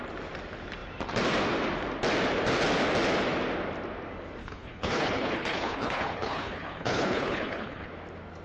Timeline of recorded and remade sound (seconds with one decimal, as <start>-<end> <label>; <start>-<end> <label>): 0.0-4.4 recorded; 4.4-7.9 remade; 7.9-8.4 recorded